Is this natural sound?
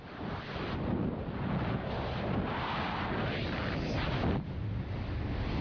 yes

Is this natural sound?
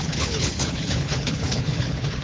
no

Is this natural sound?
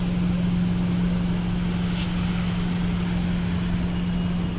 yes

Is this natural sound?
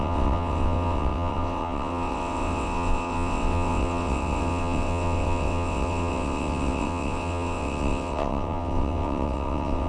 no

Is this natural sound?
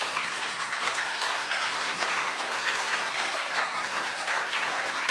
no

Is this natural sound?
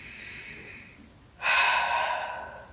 yes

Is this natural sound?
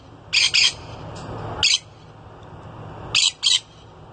yes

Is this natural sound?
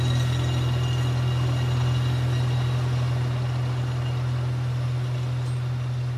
yes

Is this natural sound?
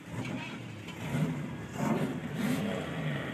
yes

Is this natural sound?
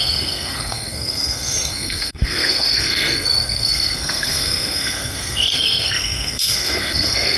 no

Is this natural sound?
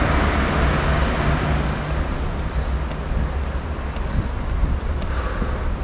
yes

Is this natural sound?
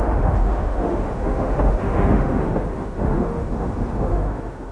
no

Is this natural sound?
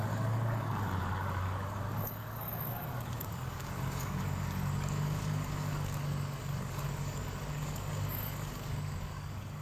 no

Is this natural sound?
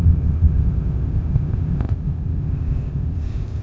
no